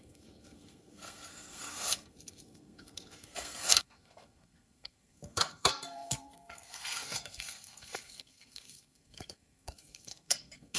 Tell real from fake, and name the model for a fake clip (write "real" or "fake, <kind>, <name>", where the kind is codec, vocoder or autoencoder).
fake, codec, SNAC